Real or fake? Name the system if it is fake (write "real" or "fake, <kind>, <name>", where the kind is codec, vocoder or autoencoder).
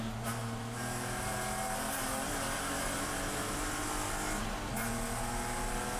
real